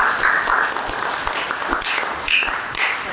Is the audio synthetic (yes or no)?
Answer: yes